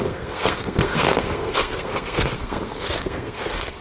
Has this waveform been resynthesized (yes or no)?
yes